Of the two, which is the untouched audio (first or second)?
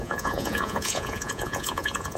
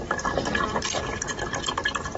second